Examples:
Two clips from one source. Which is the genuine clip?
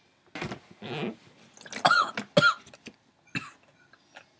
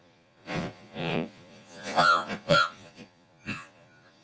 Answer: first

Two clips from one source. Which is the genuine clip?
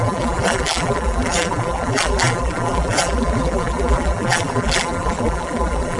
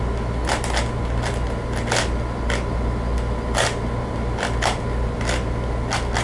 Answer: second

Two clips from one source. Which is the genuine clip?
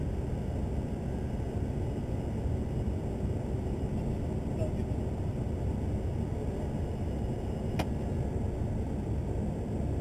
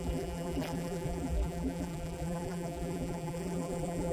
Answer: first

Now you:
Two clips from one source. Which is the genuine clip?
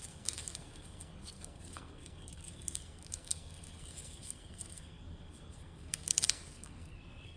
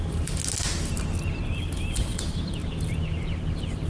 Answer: second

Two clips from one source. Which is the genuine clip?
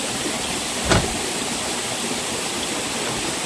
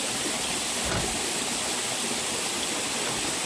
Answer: second